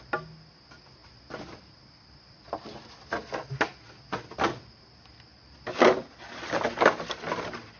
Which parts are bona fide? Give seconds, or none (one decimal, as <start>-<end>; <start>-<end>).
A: 0.0-7.8